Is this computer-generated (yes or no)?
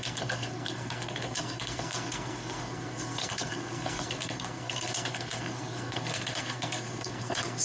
yes